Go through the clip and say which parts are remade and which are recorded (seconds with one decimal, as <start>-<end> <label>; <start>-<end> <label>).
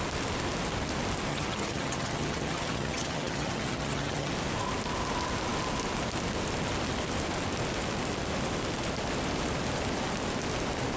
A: 0.0-1.3 recorded; 1.3-4.3 remade; 4.3-11.0 recorded